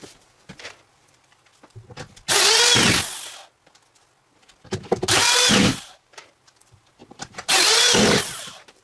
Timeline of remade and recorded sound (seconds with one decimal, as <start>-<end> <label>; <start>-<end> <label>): 0.0-1.5 remade; 1.5-4.8 recorded; 4.8-8.8 remade